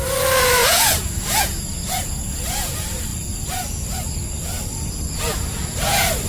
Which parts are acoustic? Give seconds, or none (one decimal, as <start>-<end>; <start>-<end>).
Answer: 0.0-0.6; 2.7-6.3